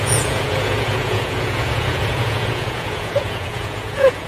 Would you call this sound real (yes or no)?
no